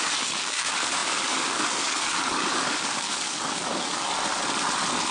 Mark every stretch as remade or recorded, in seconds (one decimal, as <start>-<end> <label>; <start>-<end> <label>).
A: 0.0-4.1 remade; 4.1-5.1 recorded